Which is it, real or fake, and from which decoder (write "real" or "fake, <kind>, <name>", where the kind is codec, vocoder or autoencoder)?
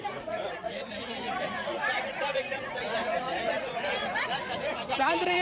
fake, vocoder, Vocos